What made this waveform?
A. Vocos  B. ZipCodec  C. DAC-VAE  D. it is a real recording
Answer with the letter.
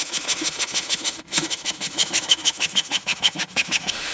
C